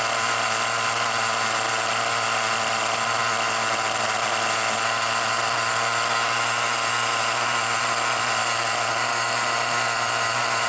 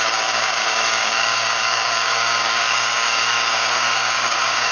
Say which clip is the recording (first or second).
first